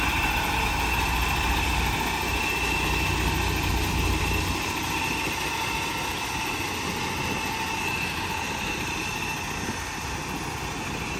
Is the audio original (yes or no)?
yes